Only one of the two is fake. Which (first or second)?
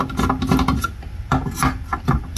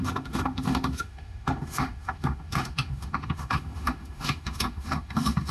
second